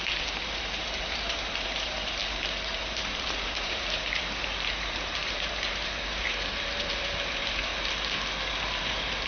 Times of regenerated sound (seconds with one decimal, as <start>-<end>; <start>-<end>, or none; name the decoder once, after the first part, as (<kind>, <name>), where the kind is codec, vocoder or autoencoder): 0.0-7.7 (vocoder, BigVGAN v2); 8.8-9.3